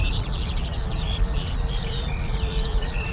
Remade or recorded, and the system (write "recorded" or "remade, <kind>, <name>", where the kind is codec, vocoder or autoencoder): remade, vocoder, BigVGAN v2